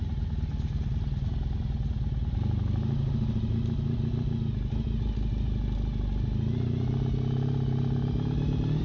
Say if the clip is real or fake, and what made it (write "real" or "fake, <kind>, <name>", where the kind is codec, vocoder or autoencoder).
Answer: real